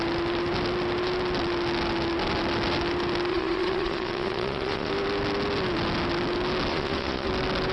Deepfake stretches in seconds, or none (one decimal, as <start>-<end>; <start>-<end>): 3.3-4.9; 6.7-7.3